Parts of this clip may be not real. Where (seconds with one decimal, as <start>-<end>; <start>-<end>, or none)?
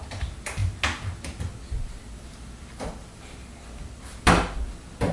0.0-0.6; 1.8-5.1